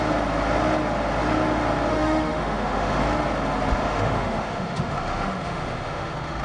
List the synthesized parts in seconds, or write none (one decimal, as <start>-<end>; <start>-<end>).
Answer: 1.9-3.0; 3.8-6.4

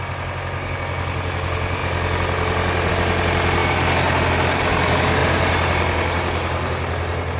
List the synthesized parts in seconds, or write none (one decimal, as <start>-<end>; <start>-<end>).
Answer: none